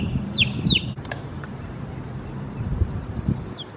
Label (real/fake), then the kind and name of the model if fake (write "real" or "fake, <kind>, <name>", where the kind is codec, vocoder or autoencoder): fake, vocoder, BigVGAN v2